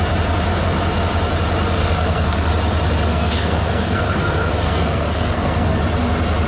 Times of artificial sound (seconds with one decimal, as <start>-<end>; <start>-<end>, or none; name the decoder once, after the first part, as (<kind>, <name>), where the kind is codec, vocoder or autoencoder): 1.8-2.5 (codec, SNAC); 3.1-5.8